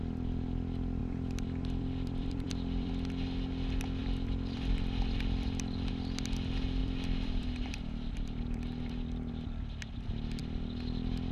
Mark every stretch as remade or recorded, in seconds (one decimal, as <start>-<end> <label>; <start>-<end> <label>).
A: 0.0-1.0 recorded; 1.0-2.9 remade; 2.9-4.0 recorded; 4.0-5.9 remade; 5.9-6.8 recorded; 6.8-9.3 remade; 9.3-11.3 recorded